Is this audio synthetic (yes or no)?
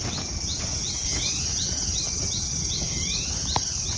no